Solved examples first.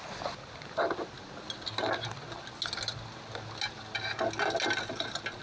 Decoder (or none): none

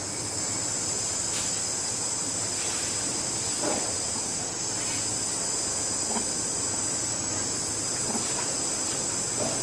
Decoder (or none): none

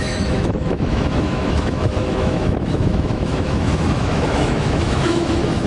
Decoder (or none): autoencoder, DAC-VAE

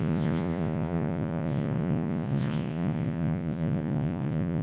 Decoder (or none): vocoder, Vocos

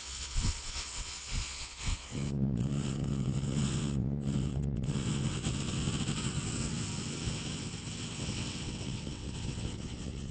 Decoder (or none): vocoder, WaveNeXt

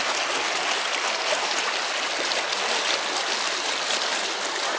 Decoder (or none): none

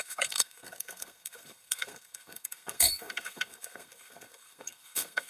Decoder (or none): codec, SNAC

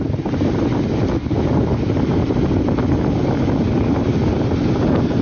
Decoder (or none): none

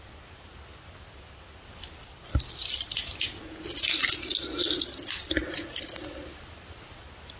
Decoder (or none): none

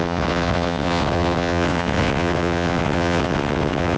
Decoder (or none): vocoder, WaveNeXt